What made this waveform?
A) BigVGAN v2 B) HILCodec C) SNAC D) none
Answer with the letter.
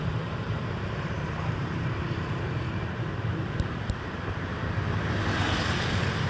A